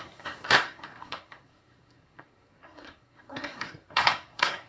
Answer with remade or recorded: remade